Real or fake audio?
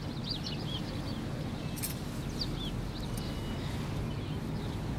real